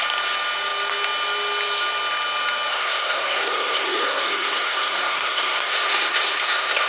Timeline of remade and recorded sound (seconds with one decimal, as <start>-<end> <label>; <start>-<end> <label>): 0.0-2.7 recorded; 2.7-6.9 remade